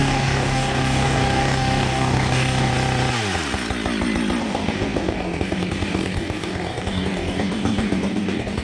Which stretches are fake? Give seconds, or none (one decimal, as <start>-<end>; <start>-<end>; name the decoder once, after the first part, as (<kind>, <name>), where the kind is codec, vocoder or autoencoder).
0.0-2.7 (codec, DAC); 4.4-8.6